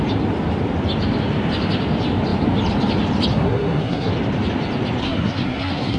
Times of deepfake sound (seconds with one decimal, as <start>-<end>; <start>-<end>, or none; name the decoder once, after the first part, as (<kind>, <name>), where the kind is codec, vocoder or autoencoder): 3.3-4.1 (codec, SNAC); 5.0-6.0